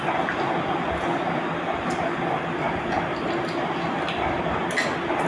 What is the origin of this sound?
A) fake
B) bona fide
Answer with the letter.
B